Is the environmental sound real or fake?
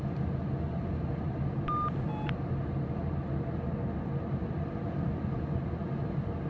real